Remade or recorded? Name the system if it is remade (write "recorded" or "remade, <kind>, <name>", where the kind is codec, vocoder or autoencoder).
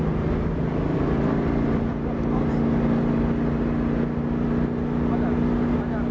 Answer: recorded